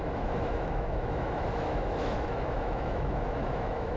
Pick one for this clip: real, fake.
fake